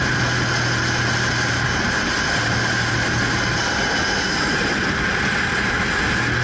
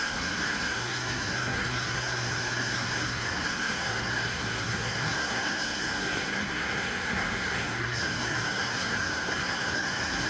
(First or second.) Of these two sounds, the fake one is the second